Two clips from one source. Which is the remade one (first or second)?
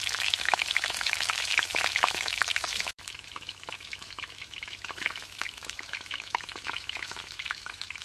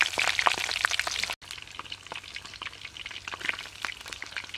first